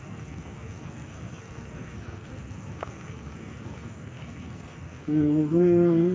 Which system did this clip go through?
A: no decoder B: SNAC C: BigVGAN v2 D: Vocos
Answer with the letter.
B